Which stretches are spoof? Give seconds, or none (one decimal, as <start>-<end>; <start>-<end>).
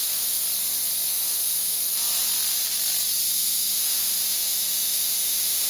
0.0-0.4; 1.1-1.8; 3.3-5.7